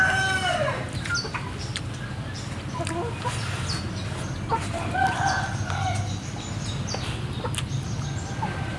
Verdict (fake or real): real